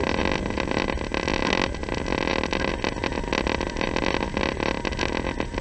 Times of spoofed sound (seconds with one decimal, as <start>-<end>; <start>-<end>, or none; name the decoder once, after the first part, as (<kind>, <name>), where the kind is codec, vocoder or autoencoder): none